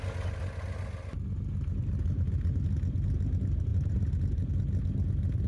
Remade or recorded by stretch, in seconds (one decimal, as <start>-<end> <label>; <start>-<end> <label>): 0.0-3.7 recorded; 3.7-4.5 remade; 4.5-5.5 recorded